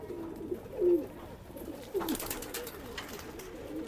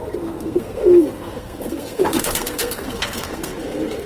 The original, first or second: first